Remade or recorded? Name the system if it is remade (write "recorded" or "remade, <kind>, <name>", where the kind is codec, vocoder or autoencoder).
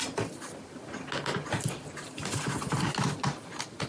recorded